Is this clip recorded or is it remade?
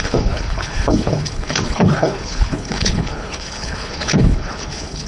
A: remade